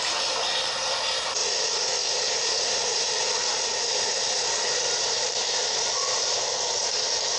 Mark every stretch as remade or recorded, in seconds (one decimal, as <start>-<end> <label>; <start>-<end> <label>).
0.0-1.4 remade; 1.4-2.3 recorded; 2.3-7.4 remade